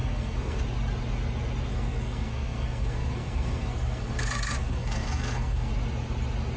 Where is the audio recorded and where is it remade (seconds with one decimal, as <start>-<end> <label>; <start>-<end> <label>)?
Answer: 0.0-0.6 remade; 0.6-1.7 recorded; 1.7-5.7 remade; 5.7-6.6 recorded